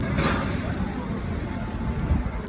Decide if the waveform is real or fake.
real